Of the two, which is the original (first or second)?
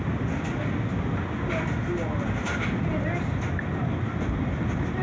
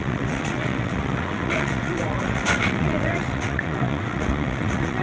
first